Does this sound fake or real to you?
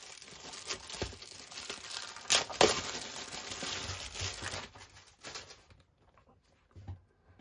real